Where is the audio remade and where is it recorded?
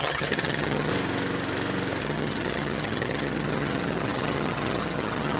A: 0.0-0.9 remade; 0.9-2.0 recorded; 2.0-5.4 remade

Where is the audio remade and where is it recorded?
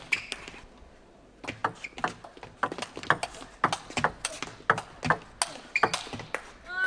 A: 0.0-6.9 recorded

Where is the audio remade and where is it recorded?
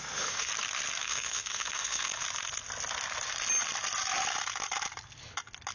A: 0.0-0.5 remade; 0.5-1.0 recorded; 1.0-2.1 remade; 2.1-5.7 recorded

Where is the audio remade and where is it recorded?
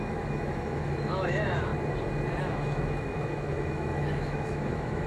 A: 0.0-1.7 remade; 1.7-2.4 recorded; 2.4-5.1 remade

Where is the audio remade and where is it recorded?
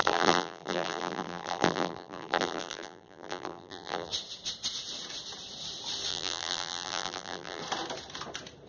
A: 0.0-4.1 remade; 4.1-6.1 recorded; 6.1-7.6 remade; 7.6-8.7 recorded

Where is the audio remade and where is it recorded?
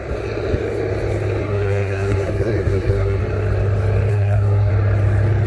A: 0.0-1.4 recorded; 1.4-3.2 remade; 3.2-4.1 recorded; 4.1-4.7 remade; 4.7-5.5 recorded